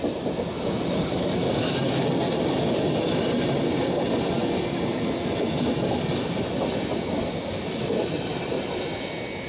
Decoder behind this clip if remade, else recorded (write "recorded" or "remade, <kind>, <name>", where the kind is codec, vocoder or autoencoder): recorded